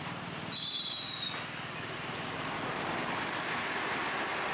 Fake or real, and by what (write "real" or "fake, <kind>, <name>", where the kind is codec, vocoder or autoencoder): real